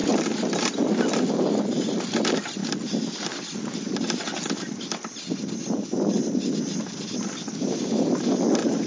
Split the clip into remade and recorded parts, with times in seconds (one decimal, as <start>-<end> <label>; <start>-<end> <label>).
0.0-8.9 recorded